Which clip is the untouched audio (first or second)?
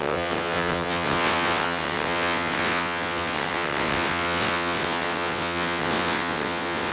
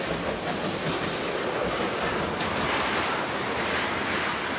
second